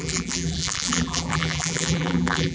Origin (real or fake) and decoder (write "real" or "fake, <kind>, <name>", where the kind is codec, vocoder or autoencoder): fake, vocoder, BigVGAN v2